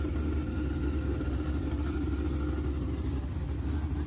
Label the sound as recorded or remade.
recorded